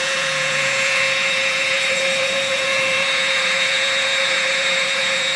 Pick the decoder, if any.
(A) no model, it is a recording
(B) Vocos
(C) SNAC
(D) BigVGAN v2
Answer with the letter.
B